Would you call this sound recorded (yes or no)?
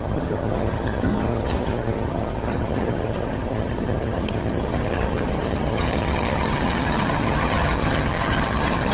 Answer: no